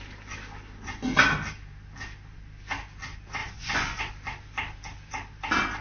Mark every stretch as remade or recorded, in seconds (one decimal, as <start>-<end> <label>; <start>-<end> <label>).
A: 0.0-3.4 recorded; 3.4-4.0 remade; 4.0-5.8 recorded

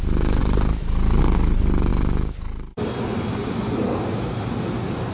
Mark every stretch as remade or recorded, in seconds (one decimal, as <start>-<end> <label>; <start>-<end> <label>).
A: 0.0-5.1 recorded

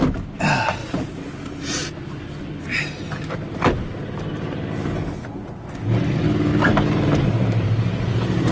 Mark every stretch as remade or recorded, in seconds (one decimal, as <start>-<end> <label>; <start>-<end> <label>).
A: 0.0-0.8 recorded; 0.8-1.9 remade; 1.9-2.7 recorded; 2.7-4.0 remade; 4.0-6.5 recorded; 6.5-8.5 remade

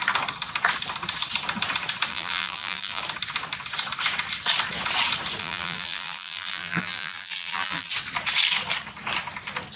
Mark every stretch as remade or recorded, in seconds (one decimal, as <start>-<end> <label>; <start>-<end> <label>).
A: 0.0-2.1 recorded; 2.1-3.0 remade; 3.0-5.4 recorded; 5.4-7.9 remade; 7.9-9.8 recorded

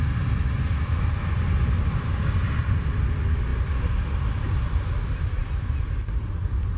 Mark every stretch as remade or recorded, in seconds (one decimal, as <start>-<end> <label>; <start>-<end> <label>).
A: 0.0-6.8 recorded

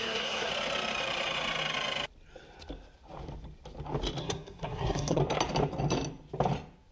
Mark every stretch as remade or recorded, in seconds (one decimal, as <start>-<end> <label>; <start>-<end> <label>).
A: 0.0-0.5 remade; 0.5-4.2 recorded; 4.2-5.2 remade; 5.2-6.9 recorded